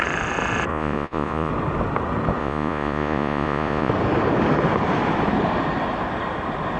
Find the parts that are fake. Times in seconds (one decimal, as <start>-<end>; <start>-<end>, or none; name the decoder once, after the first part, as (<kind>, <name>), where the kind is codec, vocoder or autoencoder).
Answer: 0.7-1.5 (vocoder, Vocos); 2.4-3.9

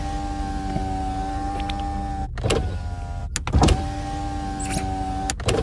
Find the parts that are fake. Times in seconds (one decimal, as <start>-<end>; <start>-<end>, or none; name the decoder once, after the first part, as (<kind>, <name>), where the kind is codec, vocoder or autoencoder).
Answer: none